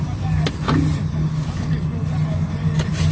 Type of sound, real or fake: real